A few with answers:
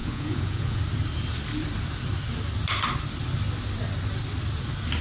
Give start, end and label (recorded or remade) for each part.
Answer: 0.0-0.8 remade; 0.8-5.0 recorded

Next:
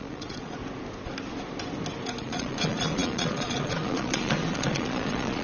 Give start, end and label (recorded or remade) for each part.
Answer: 0.0-0.6 remade; 0.6-2.2 recorded; 2.2-5.4 remade

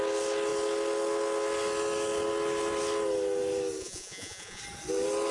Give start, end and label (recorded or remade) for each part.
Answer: 0.0-3.8 recorded; 3.8-4.6 remade; 4.6-5.3 recorded